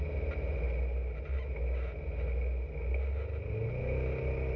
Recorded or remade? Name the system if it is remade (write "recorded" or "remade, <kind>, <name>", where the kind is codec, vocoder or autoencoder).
recorded